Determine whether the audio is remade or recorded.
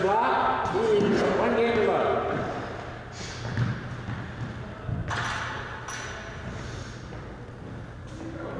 recorded